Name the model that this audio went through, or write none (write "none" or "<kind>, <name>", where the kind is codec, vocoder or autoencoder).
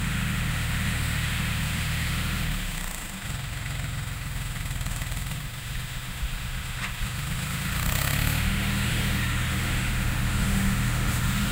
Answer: autoencoder, DAC-VAE